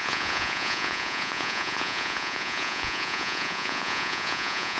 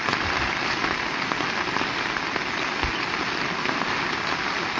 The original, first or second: second